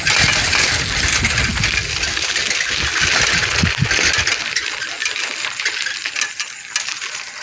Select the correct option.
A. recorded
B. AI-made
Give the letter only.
A